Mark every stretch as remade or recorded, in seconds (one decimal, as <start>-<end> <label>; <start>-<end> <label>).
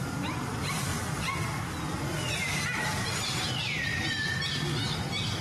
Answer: 0.0-3.9 recorded; 3.9-4.4 remade; 4.4-5.4 recorded